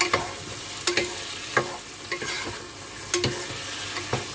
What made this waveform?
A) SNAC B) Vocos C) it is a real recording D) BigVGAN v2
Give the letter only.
C